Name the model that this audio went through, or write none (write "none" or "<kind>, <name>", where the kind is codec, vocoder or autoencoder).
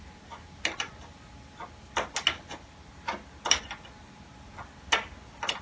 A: none